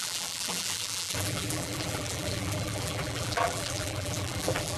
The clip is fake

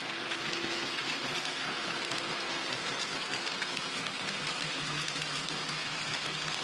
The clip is fake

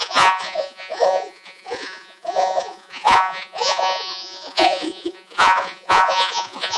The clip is fake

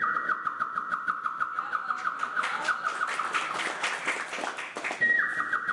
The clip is real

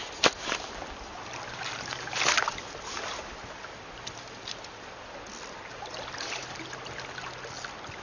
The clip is real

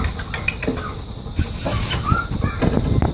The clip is real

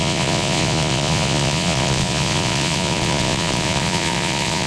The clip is fake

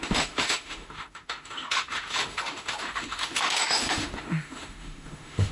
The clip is fake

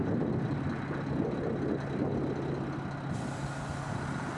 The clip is real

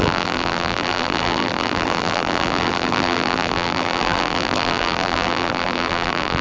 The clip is fake